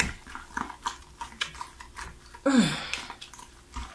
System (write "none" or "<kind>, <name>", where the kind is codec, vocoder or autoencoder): none